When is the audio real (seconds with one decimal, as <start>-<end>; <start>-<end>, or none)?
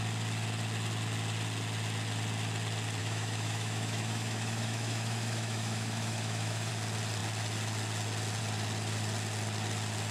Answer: 0.0-3.0; 6.7-10.1